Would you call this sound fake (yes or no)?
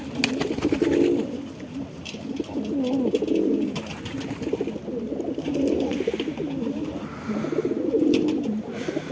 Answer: no